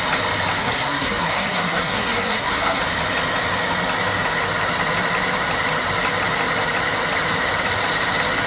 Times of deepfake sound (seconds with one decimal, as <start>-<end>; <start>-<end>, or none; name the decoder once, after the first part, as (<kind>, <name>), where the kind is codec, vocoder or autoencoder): 0.6-2.8 (codec, SNAC)